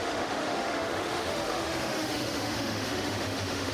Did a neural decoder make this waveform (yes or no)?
yes